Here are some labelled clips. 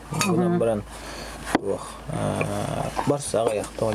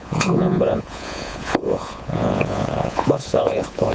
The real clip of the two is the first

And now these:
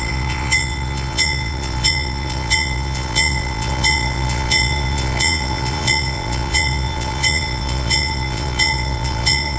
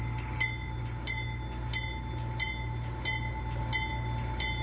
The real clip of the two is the second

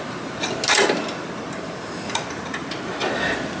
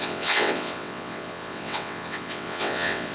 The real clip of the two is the first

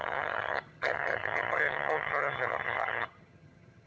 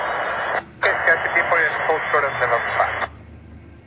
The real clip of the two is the second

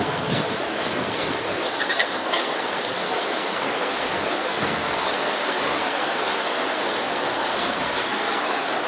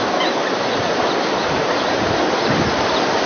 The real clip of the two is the second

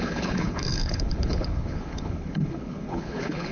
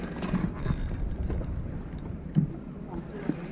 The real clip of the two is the second